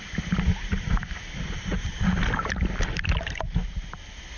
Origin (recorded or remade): recorded